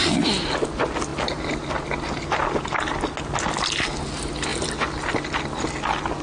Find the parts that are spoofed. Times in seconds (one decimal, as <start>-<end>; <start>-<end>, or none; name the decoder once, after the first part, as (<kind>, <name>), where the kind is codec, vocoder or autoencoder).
none